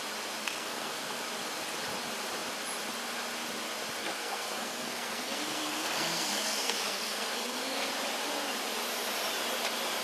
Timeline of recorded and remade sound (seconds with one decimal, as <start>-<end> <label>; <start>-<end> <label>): 0.0-0.4 recorded; 0.4-1.2 remade; 1.2-4.0 recorded; 4.0-7.9 remade; 7.9-10.0 recorded